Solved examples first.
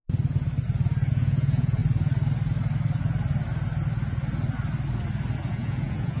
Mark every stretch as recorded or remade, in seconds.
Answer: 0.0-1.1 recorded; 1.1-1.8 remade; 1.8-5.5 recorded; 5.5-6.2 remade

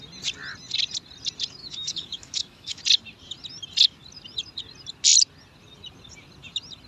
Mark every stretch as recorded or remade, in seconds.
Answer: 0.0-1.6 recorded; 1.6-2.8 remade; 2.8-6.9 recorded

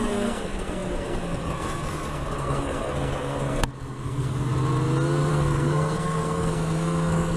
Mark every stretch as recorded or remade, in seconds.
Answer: 0.0-4.5 remade; 4.5-5.3 recorded; 5.3-7.4 remade

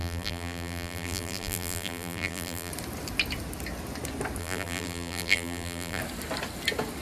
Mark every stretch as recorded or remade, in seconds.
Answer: 0.0-2.7 remade; 2.7-4.4 recorded; 4.4-6.0 remade; 6.0-7.0 recorded

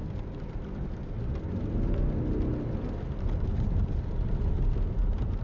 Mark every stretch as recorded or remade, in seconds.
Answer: 0.0-5.4 recorded

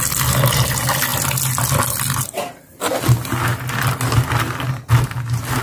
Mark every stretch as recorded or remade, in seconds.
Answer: 0.0-5.6 recorded

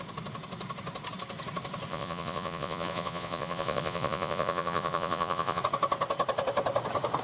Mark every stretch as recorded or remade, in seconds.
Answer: 0.0-1.9 recorded; 1.9-5.6 remade; 5.6-7.2 recorded

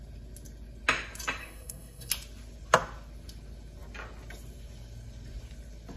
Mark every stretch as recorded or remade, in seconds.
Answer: 0.0-1.4 recorded; 1.4-2.1 remade; 2.1-6.0 recorded